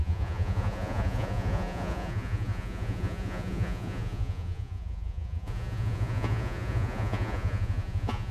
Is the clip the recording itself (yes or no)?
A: no